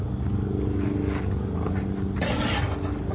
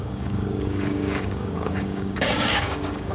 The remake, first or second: second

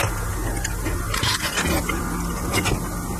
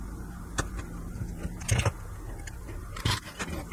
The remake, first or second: second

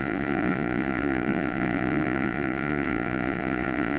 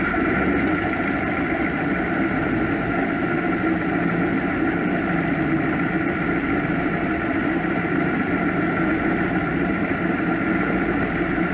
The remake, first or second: first